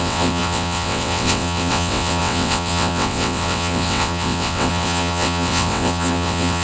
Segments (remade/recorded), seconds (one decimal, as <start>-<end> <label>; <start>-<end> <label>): 0.0-6.6 remade